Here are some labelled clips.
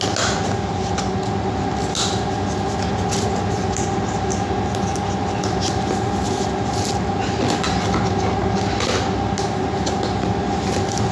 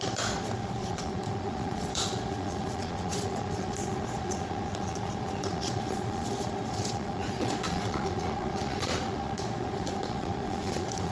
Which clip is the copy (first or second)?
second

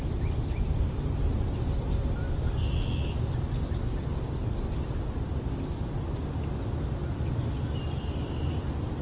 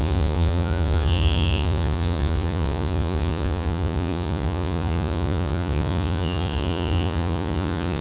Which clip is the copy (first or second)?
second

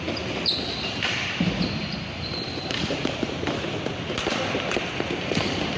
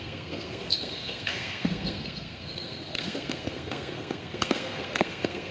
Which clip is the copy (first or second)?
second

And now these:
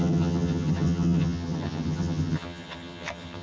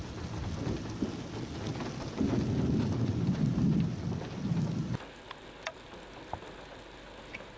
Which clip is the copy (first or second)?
first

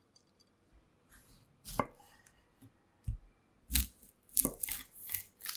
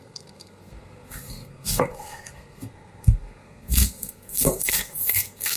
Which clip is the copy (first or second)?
second